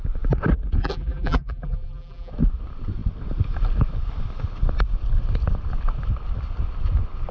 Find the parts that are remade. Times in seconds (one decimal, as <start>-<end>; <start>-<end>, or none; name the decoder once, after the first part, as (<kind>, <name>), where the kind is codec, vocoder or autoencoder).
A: 0.8-2.3 (vocoder, BigVGAN v2)